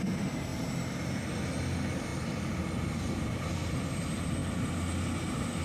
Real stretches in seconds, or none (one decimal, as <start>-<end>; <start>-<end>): 0.0-5.6